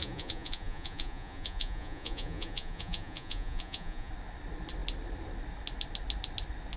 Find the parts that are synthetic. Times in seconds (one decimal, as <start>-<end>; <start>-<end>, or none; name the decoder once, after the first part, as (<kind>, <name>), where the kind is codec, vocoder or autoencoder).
0.0-4.1 (vocoder, Vocos)